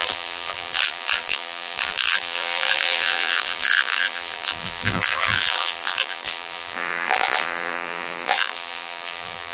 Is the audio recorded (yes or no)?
no